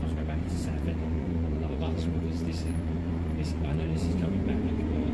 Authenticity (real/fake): fake